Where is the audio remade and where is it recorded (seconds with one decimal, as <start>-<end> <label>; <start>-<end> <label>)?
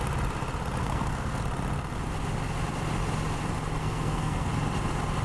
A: 0.0-0.8 recorded; 0.8-1.4 remade; 1.4-3.8 recorded; 3.8-4.5 remade; 4.5-5.2 recorded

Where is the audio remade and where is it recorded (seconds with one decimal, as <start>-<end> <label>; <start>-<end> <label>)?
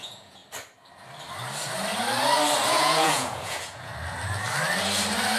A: 0.0-0.4 remade; 0.4-2.7 recorded; 2.7-3.9 remade; 3.9-5.4 recorded